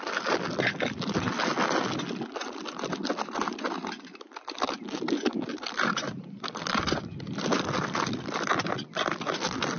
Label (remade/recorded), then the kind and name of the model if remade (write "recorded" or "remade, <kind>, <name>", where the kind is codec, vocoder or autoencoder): recorded